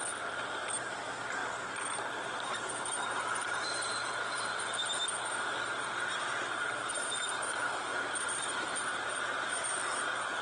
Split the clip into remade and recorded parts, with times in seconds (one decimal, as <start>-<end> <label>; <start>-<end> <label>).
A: 0.0-0.8 recorded; 0.8-1.4 remade; 1.4-2.6 recorded; 2.6-5.0 remade; 5.0-5.7 recorded; 5.7-10.4 remade